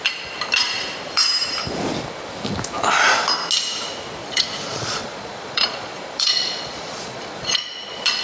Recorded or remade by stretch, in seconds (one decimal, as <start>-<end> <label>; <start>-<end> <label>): 0.0-4.2 recorded; 4.2-8.2 remade